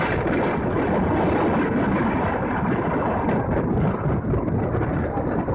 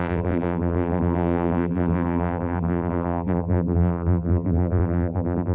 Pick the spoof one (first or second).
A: second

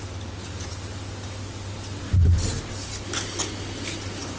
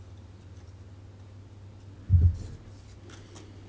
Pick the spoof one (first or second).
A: first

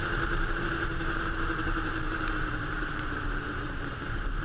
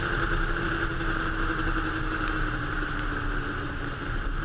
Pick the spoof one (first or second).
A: first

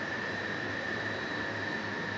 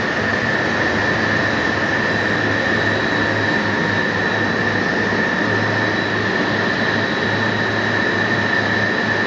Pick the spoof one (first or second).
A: first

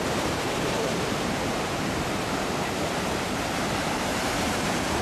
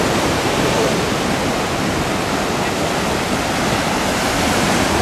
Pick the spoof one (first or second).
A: first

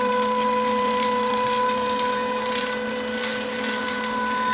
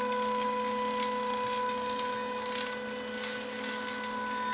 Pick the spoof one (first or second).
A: first